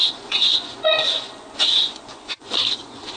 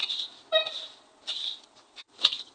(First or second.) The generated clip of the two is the first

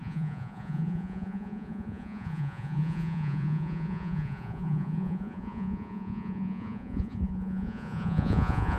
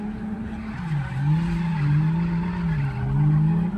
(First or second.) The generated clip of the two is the first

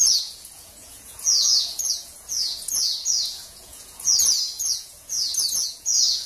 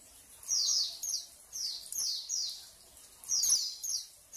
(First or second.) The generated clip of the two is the first